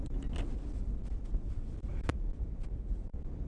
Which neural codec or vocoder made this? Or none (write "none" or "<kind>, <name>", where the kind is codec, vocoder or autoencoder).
none